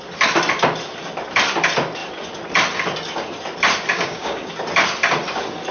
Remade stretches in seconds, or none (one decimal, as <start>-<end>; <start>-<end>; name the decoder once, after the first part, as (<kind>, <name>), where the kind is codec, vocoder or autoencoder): 3.9-4.5 (codec, DAC)